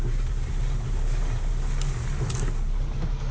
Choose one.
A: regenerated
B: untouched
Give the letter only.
B